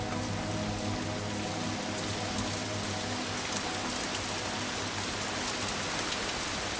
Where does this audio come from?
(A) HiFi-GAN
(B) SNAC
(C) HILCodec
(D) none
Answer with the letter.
D